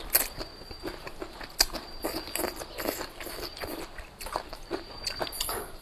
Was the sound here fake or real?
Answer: real